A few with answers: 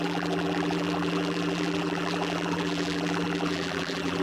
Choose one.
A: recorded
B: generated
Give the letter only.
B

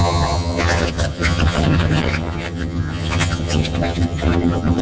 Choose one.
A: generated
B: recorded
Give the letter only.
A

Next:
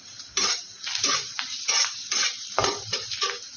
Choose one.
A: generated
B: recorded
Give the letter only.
A